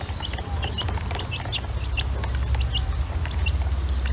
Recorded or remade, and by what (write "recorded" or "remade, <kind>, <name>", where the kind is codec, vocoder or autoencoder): recorded